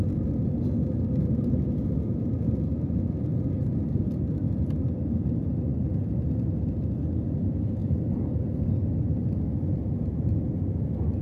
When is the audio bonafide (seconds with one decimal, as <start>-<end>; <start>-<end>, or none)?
0.0-3.3; 4.0-11.2